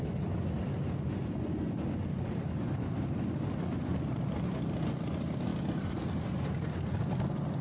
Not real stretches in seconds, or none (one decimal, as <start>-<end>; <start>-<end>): none

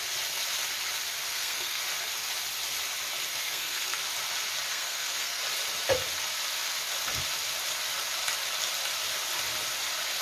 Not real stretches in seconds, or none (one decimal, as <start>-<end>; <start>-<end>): 1.3-1.8; 3.3-4.0; 4.7-5.4

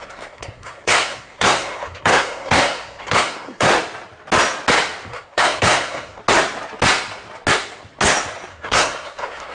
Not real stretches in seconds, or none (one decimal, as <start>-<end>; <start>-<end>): 0.0-3.7; 5.1-6.2; 8.5-9.5

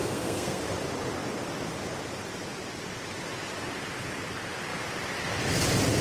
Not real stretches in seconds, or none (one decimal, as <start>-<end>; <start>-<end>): 0.0-0.6

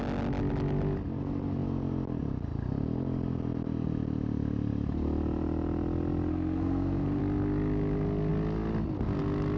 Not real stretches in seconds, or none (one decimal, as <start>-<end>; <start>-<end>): 6.3-7.2

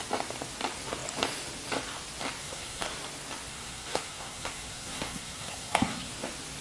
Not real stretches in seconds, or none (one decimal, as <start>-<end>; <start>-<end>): 2.4-2.9; 3.5-6.1

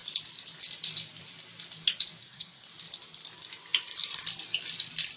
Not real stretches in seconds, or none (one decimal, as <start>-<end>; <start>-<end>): 2.2-2.7

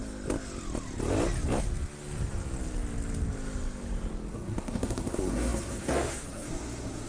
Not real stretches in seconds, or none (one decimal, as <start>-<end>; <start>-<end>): 4.3-7.1